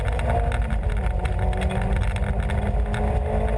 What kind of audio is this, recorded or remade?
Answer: recorded